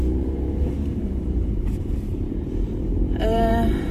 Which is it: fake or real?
fake